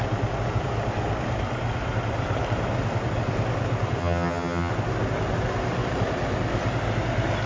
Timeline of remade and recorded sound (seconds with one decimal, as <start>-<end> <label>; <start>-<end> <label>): 0.0-4.0 recorded; 4.0-4.7 remade; 4.7-7.5 recorded